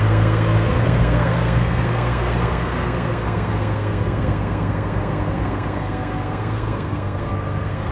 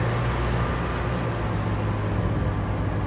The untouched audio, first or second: second